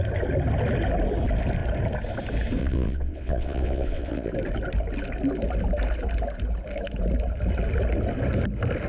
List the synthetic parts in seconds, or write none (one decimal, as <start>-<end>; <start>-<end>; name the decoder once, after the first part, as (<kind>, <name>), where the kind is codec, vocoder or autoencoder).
2.6-4.3 (vocoder, WaveNeXt)